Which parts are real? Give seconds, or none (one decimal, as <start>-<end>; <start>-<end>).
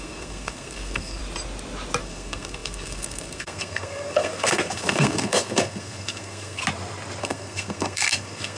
1.2-2.0; 6.6-7.2